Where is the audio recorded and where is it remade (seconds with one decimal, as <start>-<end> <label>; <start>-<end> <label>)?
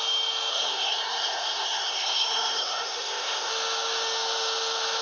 0.0-0.5 recorded; 0.5-3.5 remade; 3.5-5.0 recorded